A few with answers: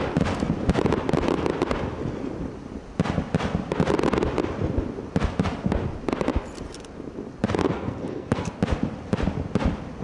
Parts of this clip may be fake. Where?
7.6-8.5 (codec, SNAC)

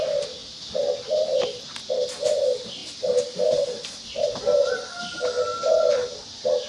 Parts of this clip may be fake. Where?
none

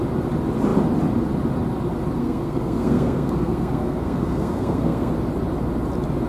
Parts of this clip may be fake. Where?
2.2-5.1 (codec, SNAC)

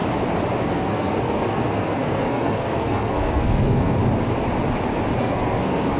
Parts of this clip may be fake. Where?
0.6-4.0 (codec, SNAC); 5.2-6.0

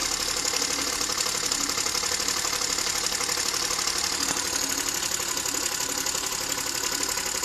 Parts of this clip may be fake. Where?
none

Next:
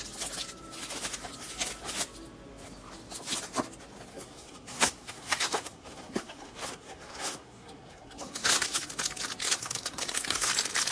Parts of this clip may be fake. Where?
4.1-8.9 (codec, SNAC); 9.4-10.5